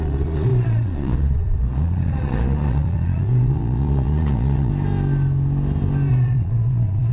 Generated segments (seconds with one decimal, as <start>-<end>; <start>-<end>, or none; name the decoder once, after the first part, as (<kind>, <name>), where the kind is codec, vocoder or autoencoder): 0.0-4.7 (vocoder, Vocos); 6.1-7.1

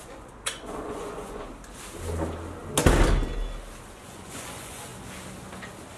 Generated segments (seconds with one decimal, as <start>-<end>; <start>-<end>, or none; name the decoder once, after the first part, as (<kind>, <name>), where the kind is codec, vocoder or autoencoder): 0.0-1.5 (vocoder, Vocos); 3.9-4.9

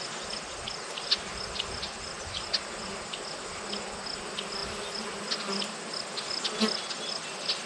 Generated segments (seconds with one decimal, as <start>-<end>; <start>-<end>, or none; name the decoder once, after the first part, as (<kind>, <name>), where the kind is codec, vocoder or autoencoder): none

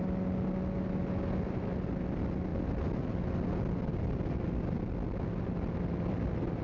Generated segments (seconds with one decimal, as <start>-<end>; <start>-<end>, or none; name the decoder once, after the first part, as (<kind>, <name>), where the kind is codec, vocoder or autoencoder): none

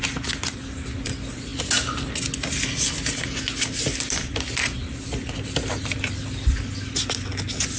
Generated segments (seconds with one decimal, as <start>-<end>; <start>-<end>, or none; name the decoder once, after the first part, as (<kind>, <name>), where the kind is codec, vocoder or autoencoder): none

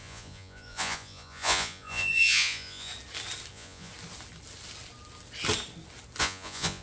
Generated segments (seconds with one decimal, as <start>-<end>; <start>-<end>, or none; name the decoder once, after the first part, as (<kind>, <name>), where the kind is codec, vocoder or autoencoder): 0.0-2.9 (vocoder, Vocos); 3.5-3.9; 6.2-6.8

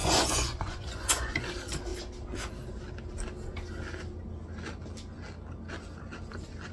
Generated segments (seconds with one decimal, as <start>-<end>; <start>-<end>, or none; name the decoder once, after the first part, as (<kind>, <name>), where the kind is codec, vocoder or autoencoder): 0.0-1.5 (vocoder, Vocos)

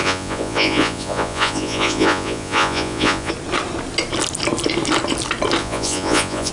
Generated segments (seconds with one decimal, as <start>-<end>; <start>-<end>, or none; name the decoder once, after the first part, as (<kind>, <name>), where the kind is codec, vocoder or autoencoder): 0.0-3.3 (vocoder, Vocos); 5.6-6.5